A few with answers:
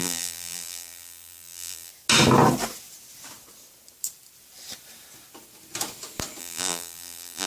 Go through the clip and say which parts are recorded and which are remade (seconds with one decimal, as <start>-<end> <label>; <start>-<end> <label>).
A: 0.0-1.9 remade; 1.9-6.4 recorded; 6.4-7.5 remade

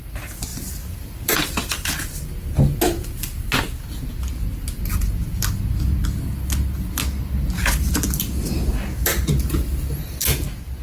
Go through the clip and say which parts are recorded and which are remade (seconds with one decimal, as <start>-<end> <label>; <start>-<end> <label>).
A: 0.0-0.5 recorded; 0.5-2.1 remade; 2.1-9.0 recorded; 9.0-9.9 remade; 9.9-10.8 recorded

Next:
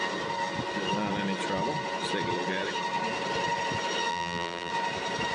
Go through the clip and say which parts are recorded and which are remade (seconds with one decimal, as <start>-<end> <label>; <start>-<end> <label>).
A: 0.0-4.1 recorded; 4.1-4.7 remade; 4.7-5.3 recorded

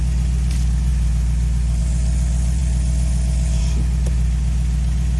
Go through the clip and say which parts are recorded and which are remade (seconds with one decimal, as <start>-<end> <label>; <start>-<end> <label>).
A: 0.0-5.2 recorded

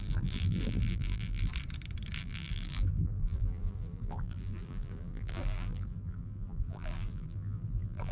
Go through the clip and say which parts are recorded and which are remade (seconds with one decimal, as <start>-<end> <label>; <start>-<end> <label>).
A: 0.0-1.5 remade; 1.5-2.2 recorded; 2.2-8.1 remade